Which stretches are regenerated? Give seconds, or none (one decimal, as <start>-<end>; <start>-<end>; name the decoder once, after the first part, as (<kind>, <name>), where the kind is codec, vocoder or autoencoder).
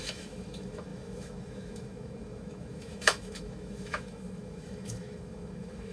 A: 0.0-5.9 (autoencoder, DAC-VAE)